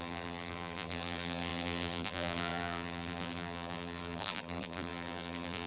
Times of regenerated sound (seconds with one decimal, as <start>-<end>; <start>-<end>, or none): 0.0-5.7